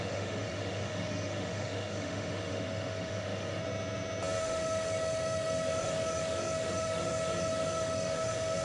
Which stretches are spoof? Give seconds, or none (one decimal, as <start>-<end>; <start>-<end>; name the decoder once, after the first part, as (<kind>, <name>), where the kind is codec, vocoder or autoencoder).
0.0-3.6 (autoencoder, DAC-VAE); 4.4-8.6